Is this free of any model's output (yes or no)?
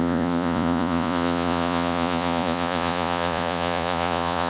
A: no